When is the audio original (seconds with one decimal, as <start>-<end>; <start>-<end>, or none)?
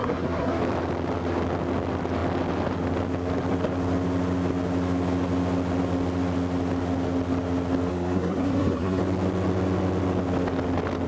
0.6-7.9; 9.0-11.1